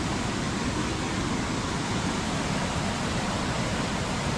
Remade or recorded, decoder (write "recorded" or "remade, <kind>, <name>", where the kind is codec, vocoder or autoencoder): recorded